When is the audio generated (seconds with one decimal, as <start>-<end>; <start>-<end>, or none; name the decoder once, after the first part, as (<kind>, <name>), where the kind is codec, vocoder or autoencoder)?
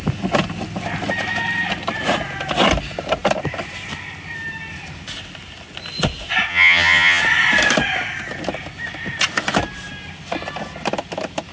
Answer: 6.5-7.2 (vocoder, HiFi-GAN)